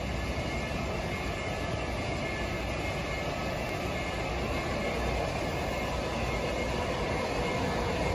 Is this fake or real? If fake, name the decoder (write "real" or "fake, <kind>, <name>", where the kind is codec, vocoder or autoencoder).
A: real